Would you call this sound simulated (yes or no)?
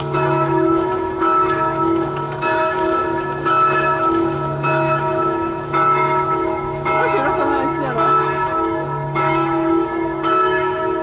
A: yes